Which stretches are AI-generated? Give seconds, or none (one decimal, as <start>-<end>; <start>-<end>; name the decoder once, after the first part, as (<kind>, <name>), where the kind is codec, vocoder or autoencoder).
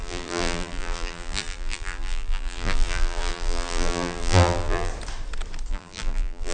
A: 0.0-4.9 (vocoder, BigVGAN v2); 5.7-6.5